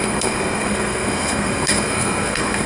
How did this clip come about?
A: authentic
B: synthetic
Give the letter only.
B